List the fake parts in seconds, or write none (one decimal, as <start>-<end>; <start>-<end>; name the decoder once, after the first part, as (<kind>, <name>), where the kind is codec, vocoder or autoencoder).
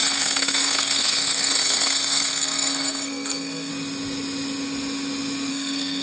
0.0-3.7 (codec, SNAC); 5.5-6.0